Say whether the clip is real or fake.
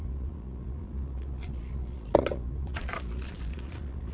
fake